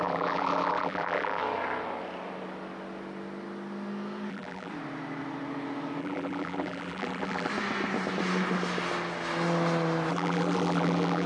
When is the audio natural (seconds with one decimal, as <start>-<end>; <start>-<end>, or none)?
1.4-4.3; 4.7-6.0; 7.5-10.1